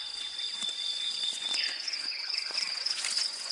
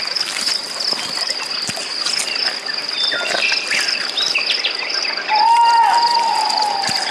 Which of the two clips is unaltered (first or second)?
second